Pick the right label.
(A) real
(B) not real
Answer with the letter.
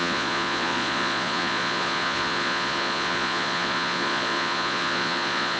B